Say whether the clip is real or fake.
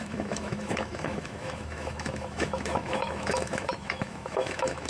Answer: fake